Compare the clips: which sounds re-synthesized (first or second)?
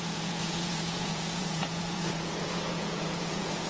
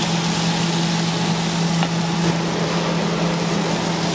first